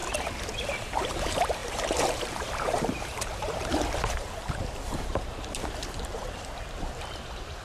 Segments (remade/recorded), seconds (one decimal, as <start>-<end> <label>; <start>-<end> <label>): 0.0-0.5 recorded; 0.5-7.6 remade